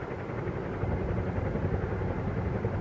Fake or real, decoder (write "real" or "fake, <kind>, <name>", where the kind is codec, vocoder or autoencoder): real